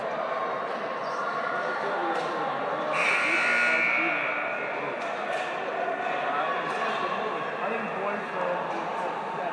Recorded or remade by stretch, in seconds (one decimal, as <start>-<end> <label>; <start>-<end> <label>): 0.0-9.5 recorded